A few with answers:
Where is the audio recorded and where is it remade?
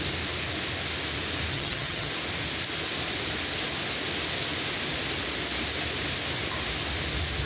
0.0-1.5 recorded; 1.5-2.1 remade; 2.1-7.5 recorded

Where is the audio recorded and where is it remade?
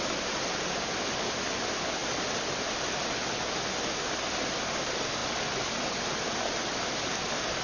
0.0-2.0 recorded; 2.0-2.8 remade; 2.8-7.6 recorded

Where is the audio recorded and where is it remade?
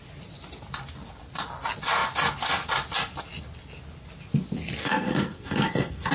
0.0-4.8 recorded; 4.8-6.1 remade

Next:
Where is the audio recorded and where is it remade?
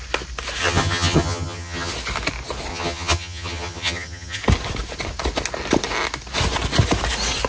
0.0-0.6 recorded; 0.6-1.9 remade; 1.9-2.7 recorded; 2.7-4.4 remade; 4.4-7.5 recorded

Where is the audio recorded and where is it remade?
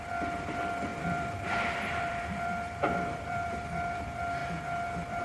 0.0-0.9 recorded; 0.9-4.0 remade; 4.0-5.2 recorded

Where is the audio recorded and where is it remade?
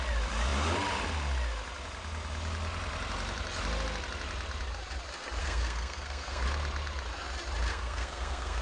0.0-5.4 recorded; 5.4-6.4 remade; 6.4-7.7 recorded; 7.7-8.6 remade